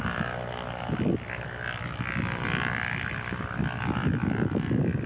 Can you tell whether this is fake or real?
real